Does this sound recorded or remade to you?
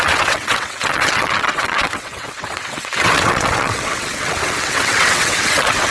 remade